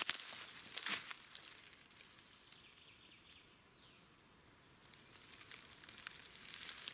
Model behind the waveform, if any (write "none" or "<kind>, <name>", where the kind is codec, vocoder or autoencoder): none